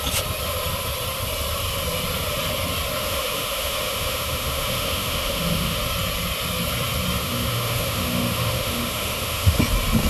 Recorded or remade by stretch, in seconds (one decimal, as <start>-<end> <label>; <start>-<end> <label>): 0.0-3.0 recorded; 3.0-5.8 remade; 5.8-7.2 recorded; 7.2-9.6 remade; 9.6-10.1 recorded